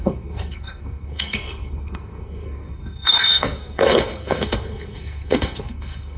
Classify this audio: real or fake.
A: fake